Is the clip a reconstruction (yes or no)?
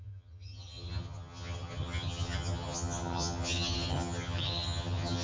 yes